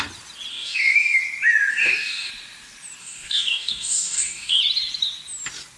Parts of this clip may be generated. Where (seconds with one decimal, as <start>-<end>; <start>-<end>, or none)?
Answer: 0.5-1.2; 1.7-2.3; 3.0-4.6